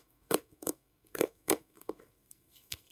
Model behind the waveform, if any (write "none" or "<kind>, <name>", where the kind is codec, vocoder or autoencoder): codec, SNAC